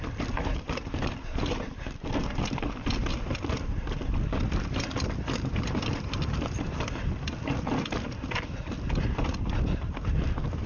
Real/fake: real